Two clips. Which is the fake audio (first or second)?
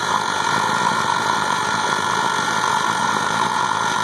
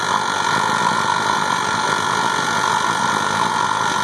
first